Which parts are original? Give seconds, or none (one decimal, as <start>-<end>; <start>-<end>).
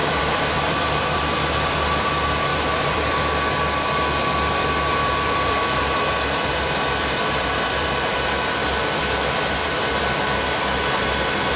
1.2-2.5; 3.2-5.0; 10.0-11.6